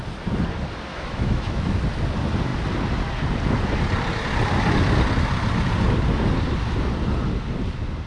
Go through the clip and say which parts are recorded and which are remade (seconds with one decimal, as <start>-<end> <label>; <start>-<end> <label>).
0.0-0.9 recorded; 0.9-1.8 remade; 1.8-8.1 recorded